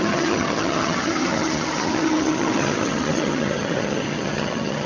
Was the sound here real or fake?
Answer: fake